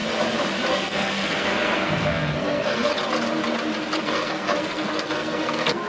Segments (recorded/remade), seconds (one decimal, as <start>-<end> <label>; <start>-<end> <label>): 0.0-0.7 recorded; 0.7-2.9 remade; 2.9-4.0 recorded; 4.0-5.9 remade